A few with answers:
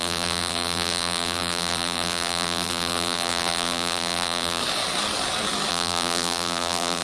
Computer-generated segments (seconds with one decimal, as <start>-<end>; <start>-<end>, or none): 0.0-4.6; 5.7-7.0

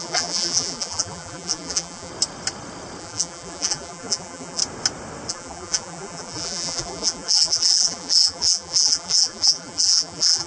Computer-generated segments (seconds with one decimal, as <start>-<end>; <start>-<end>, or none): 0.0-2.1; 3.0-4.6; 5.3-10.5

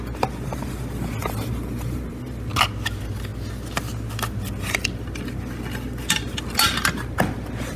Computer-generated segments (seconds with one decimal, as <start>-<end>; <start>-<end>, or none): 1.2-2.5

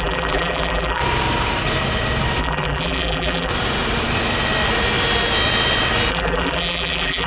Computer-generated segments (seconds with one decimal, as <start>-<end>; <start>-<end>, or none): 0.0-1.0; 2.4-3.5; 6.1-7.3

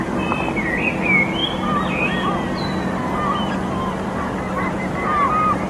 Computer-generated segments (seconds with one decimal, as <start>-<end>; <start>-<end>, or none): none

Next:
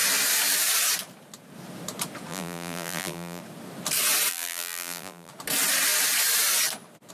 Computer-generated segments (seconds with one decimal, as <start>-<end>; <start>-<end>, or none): 2.3-3.4; 4.3-5.3

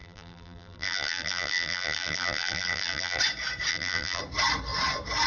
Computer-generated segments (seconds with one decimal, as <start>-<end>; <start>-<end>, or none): 0.0-3.2; 3.7-4.2

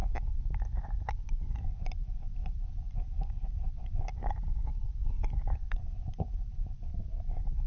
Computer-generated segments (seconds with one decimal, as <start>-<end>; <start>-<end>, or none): 1.8-2.3; 3.3-7.7